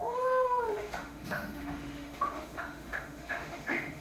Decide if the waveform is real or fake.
fake